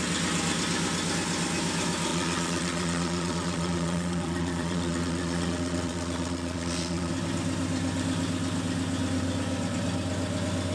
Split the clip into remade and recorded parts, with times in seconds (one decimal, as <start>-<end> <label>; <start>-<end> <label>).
0.0-2.1 recorded; 2.1-7.1 remade; 7.1-10.7 recorded